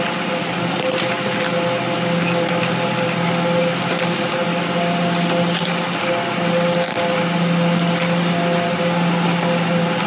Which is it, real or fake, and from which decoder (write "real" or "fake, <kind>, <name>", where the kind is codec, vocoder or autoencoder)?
real